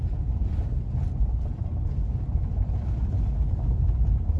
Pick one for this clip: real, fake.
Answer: real